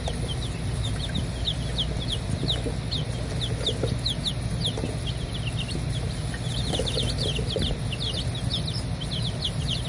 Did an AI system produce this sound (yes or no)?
no